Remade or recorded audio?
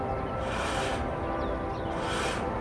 recorded